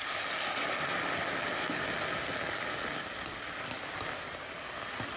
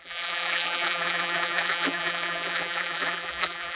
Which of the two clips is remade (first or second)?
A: second